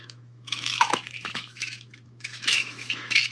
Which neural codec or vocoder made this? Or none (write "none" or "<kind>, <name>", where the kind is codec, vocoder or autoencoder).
autoencoder, DAC-VAE